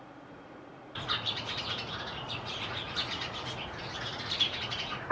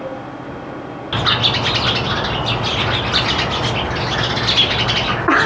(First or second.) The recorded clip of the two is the second